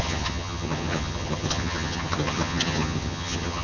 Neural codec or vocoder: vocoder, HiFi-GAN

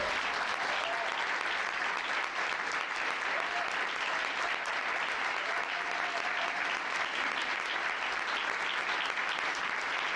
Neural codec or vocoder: none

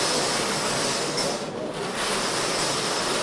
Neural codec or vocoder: none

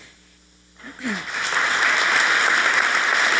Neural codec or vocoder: none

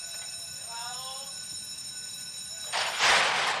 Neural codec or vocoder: none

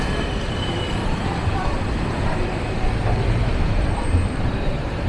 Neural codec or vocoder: vocoder, BigVGAN v2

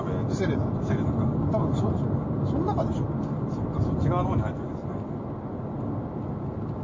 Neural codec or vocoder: none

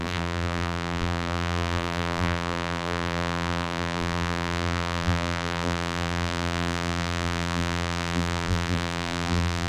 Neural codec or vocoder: vocoder, BigVGAN v2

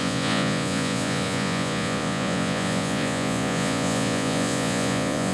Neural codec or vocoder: vocoder, Vocos